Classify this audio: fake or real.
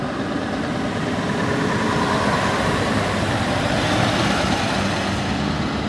fake